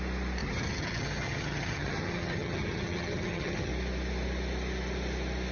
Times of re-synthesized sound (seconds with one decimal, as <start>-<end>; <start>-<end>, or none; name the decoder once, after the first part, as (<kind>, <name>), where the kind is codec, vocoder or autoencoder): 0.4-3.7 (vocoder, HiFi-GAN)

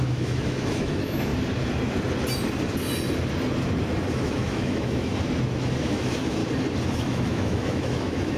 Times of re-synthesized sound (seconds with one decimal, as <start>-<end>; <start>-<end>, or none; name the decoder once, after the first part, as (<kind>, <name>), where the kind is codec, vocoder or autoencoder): 0.0-1.3 (autoencoder, DAC-VAE); 4.1-5.1; 5.8-6.4; 6.9-8.4

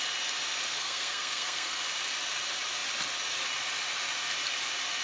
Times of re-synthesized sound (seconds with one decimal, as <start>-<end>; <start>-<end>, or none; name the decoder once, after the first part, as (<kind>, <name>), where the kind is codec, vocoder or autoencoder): 0.7-1.8 (codec, SNAC)